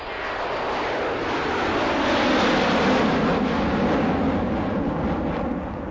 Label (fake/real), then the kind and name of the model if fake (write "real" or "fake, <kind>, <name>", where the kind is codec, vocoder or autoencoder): real